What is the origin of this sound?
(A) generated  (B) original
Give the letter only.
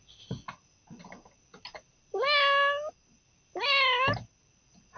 B